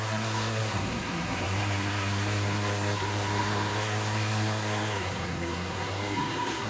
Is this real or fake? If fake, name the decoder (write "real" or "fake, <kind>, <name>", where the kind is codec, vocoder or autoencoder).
fake, codec, SNAC